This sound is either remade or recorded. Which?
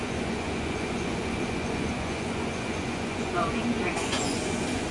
remade